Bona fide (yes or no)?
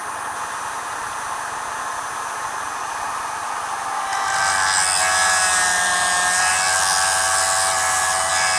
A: yes